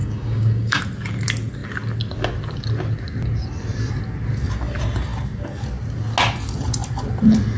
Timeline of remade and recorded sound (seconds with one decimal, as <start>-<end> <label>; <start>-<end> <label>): 0.0-0.8 remade; 0.8-7.6 recorded